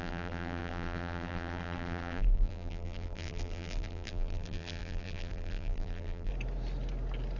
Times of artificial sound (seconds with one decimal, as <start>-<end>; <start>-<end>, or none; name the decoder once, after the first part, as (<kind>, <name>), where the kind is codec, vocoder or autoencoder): 0.0-6.3 (vocoder, BigVGAN v2)